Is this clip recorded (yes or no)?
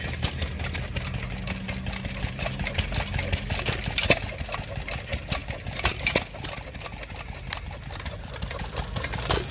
yes